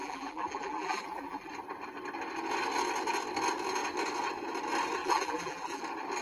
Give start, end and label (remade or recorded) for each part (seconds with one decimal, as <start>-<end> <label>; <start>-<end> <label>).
0.0-1.5 remade; 1.5-5.0 recorded; 5.0-5.8 remade; 5.8-6.2 recorded